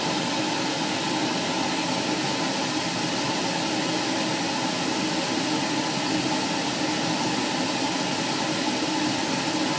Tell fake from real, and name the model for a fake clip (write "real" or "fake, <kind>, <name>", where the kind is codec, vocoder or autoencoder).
real